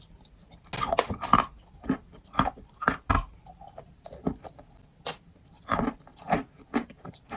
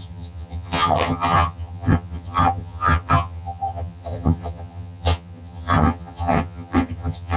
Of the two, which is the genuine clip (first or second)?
first